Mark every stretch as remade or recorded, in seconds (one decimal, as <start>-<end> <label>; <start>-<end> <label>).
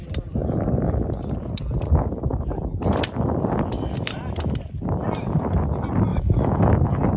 0.0-6.1 recorded; 6.1-6.7 remade; 6.7-7.2 recorded